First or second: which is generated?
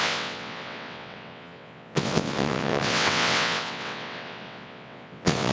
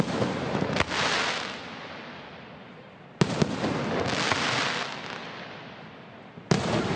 first